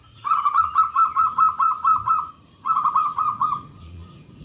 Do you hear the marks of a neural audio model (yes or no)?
yes